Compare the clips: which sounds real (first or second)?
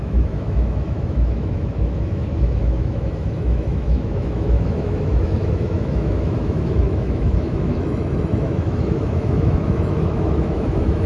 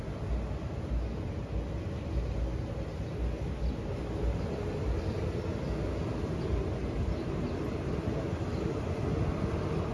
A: second